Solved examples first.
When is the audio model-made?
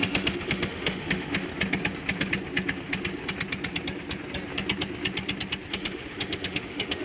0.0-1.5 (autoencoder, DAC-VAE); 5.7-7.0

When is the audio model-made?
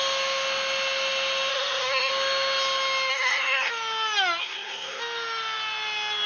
1.5-2.1 (codec, SNAC); 3.1-3.7; 4.4-5.0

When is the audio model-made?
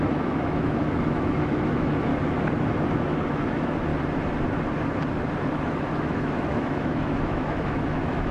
0.0-2.1 (autoencoder, DAC-VAE); 3.2-3.9; 5.6-8.3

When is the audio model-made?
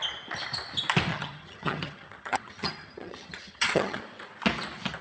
1.1-4.0 (vocoder, HiFi-GAN)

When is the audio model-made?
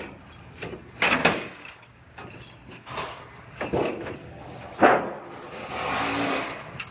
1.2-2.3 (codec, DAC); 2.7-3.2; 4.2-5.0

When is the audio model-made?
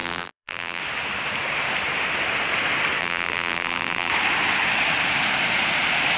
0.0-0.8 (vocoder, BigVGAN v2); 3.0-4.1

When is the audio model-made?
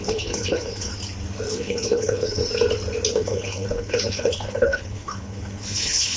0.0-0.9 (codec, HILCodec); 1.5-2.4; 3.1-6.2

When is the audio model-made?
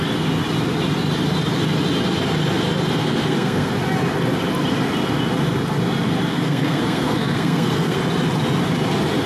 3.0-3.7 (codec, SNAC); 6.3-8.0